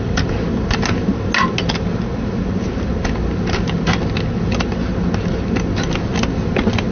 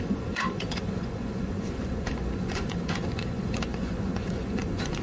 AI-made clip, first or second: second